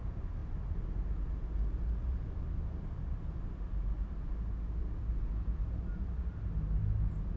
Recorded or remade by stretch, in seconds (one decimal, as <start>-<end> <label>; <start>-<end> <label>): 0.0-7.4 recorded